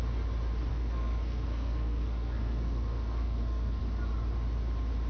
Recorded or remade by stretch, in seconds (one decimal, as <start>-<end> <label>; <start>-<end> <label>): 0.0-0.7 recorded; 0.7-3.8 remade; 3.8-5.1 recorded